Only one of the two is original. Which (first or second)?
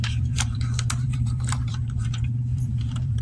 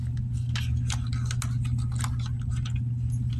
second